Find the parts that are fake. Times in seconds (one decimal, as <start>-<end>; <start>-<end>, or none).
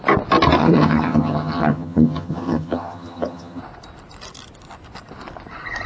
0.6-3.6